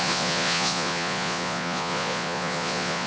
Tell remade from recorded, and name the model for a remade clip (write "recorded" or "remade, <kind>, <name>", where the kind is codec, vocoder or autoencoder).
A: remade, vocoder, Vocos